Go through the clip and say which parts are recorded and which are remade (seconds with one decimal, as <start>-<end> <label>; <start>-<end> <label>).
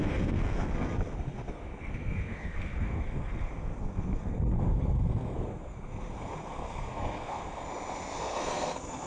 0.0-7.6 remade; 7.6-8.2 recorded; 8.2-9.1 remade